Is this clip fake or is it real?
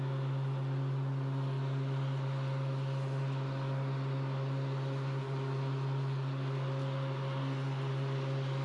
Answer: real